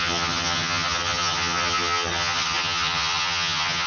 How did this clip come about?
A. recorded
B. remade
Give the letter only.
B